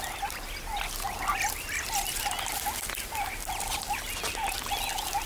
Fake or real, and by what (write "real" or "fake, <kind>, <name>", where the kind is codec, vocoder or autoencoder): real